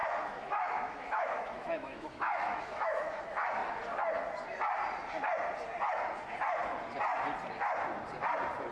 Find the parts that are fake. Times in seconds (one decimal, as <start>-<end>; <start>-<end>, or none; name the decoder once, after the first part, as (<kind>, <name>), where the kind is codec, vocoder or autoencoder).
0.0-3.2 (autoencoder, DAC-VAE)